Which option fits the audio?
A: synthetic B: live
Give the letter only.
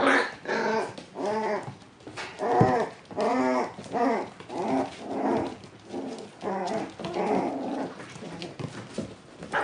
B